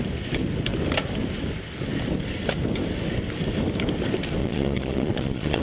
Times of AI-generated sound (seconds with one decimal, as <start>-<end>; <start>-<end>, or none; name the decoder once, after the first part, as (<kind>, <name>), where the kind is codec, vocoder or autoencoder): 4.4-5.6 (vocoder, Vocos)